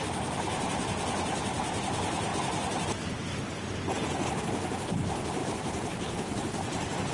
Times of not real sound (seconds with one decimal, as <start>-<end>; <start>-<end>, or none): 5.4-7.1